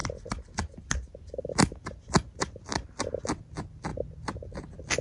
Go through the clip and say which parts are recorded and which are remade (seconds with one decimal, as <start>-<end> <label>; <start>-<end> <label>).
0.0-5.0 recorded

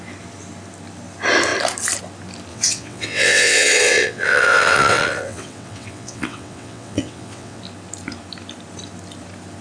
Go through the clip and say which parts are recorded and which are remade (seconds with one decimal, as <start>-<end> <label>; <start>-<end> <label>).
0.0-2.5 recorded; 2.5-7.6 remade; 7.6-9.6 recorded